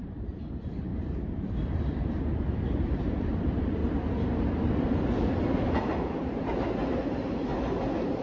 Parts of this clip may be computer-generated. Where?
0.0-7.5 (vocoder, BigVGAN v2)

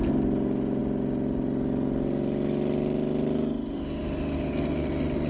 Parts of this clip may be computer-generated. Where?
none

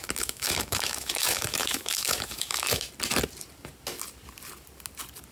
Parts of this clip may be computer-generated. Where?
0.0-2.9 (autoencoder, DAC-VAE)